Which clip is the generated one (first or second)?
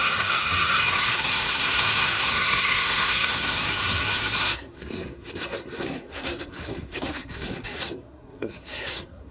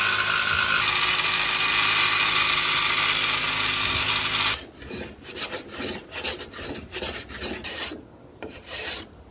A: first